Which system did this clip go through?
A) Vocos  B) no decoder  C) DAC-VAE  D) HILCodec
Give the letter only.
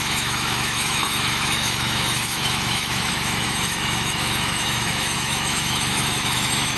C